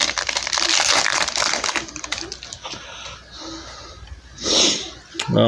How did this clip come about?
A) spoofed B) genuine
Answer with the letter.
B